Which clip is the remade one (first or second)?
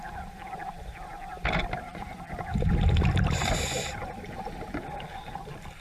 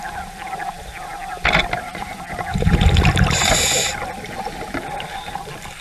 first